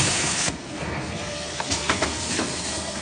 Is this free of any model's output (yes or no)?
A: no